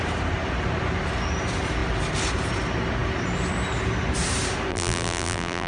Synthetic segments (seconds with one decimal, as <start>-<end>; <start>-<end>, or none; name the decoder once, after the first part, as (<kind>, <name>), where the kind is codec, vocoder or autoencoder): 4.7-5.7 (vocoder, BigVGAN v2)